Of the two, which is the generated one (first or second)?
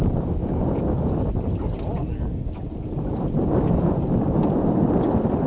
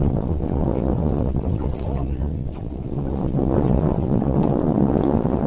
second